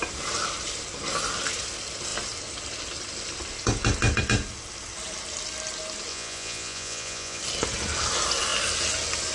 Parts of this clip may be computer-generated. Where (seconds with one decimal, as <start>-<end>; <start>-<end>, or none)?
6.1-7.4

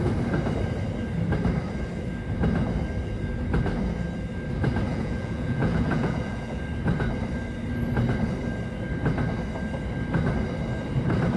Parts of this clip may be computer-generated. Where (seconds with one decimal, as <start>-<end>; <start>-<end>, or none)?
4.9-6.6

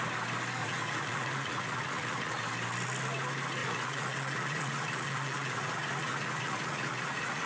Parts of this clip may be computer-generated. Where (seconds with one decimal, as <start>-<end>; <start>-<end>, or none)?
0.6-2.4; 3.6-7.5

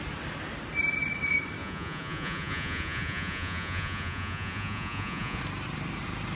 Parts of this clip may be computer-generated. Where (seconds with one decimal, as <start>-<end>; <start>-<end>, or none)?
1.6-5.4

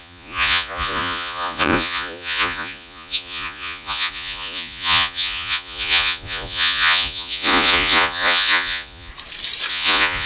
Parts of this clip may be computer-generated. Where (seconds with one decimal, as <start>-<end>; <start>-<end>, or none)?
0.0-9.1; 9.7-10.3

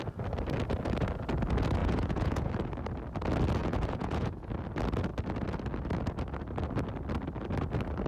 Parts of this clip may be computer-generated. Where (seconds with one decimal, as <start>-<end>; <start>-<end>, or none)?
1.8-2.5; 3.6-4.5